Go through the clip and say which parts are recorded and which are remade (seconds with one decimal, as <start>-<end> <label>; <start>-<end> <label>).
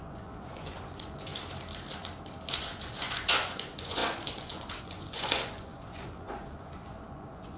0.0-1.3 remade; 1.3-2.6 recorded; 2.6-7.6 remade